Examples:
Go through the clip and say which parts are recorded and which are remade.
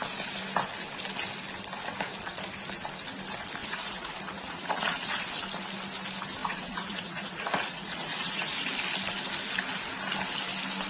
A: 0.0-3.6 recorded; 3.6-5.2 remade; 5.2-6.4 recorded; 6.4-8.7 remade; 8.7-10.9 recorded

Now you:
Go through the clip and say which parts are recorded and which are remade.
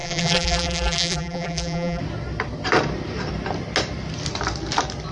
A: 0.0-2.0 remade; 2.0-5.1 recorded